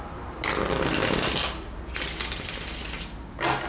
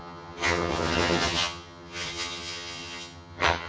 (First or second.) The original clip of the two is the first